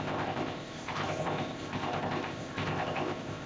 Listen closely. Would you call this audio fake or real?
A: fake